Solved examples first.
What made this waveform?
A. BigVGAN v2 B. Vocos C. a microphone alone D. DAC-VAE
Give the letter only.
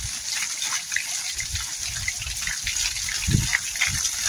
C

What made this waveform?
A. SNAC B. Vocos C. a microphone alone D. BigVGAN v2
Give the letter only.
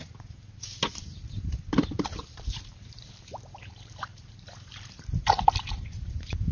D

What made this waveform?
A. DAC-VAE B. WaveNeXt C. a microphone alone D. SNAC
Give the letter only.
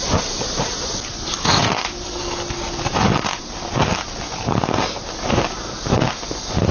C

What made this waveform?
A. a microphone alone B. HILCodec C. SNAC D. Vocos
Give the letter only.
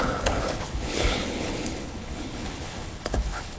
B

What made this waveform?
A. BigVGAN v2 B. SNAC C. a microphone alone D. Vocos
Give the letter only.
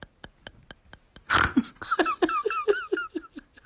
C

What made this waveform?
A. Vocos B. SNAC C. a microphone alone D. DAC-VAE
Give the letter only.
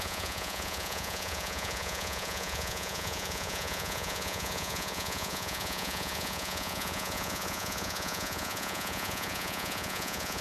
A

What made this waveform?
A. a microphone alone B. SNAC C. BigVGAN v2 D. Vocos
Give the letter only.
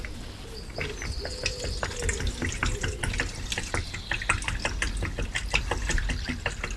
A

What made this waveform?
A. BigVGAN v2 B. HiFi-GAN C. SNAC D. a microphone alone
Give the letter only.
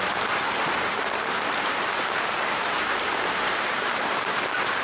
A